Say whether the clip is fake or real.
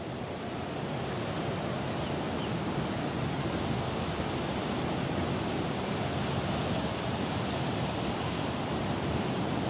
real